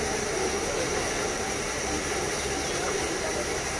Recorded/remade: remade